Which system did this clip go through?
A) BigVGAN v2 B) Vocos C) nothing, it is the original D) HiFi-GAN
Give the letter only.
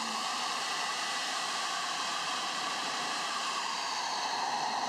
A